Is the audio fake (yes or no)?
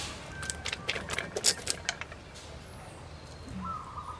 no